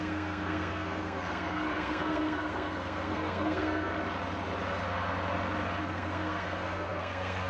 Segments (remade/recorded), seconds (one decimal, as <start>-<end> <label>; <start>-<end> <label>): 0.0-3.9 remade; 3.9-5.8 recorded; 5.8-7.5 remade